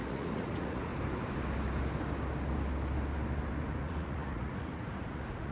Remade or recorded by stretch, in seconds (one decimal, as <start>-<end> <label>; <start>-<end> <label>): 0.0-0.9 remade; 0.9-3.8 recorded; 3.8-5.5 remade